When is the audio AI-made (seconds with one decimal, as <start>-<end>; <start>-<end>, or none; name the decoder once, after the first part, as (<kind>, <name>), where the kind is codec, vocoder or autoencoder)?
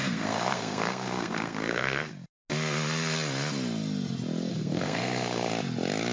0.0-2.1 (codec, SNAC); 4.5-5.5